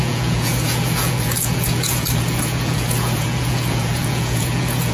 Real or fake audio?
fake